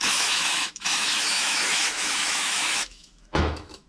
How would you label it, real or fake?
fake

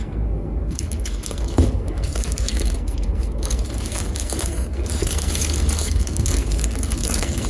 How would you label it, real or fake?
fake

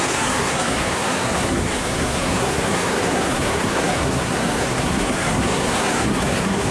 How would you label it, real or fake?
fake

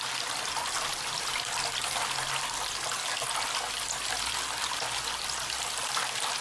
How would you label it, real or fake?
real